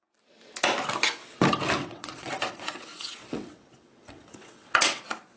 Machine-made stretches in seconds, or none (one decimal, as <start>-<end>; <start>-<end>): 1.8-5.0